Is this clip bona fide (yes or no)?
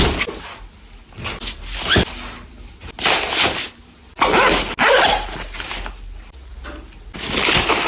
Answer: yes